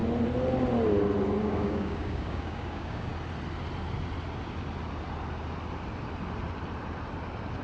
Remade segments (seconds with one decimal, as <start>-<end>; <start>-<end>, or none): 1.4-3.1